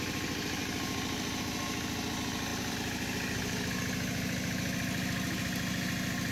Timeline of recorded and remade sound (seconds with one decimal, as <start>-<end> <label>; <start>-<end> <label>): 0.0-6.3 recorded